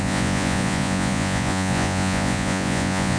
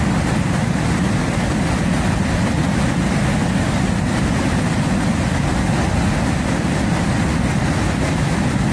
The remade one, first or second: first